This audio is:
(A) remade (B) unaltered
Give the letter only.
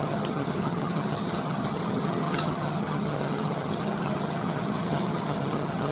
A